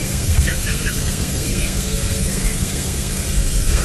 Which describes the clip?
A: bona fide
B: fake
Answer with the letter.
B